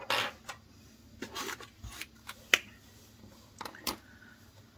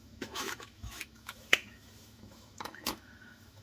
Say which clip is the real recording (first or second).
first